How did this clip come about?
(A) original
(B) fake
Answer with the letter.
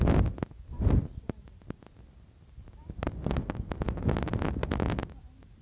A